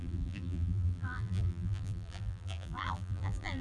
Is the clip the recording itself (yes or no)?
no